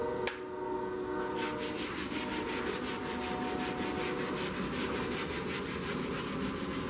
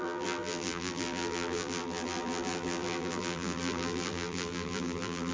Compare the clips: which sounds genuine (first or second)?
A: first